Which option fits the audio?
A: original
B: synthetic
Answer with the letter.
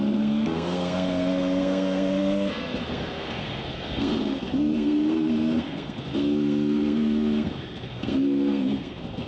B